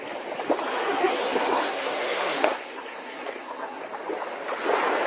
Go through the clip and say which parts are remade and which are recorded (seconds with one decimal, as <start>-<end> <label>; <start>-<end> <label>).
0.0-0.7 recorded; 0.7-3.8 remade; 3.8-5.1 recorded